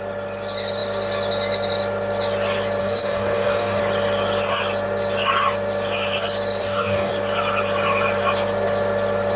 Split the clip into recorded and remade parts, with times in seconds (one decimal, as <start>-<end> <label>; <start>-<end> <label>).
0.0-2.8 recorded; 2.8-3.8 remade; 3.8-6.6 recorded; 6.6-7.1 remade; 7.1-9.4 recorded